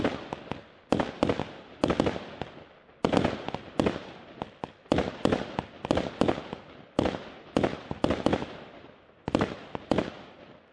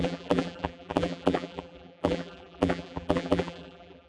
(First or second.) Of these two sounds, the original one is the first